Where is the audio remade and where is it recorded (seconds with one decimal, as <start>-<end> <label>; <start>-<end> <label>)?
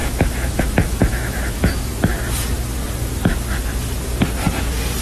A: 0.0-1.9 remade; 1.9-5.0 recorded